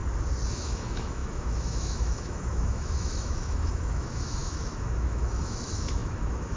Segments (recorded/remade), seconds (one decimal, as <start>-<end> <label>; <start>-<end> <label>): 0.0-0.5 recorded; 0.5-6.6 remade